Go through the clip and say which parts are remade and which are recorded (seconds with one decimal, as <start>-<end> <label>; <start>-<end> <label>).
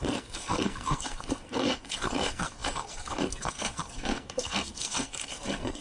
0.0-5.8 remade